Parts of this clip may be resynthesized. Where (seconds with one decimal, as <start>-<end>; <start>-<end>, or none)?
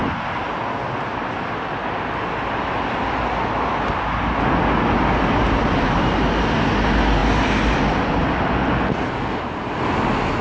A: none